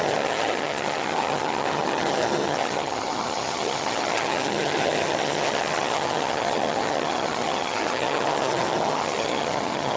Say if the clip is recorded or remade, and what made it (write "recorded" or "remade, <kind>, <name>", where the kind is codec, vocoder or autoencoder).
remade, vocoder, HiFi-GAN